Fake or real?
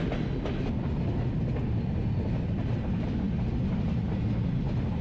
real